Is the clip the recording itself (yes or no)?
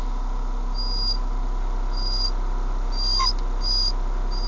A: yes